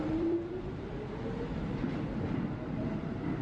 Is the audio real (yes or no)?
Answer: no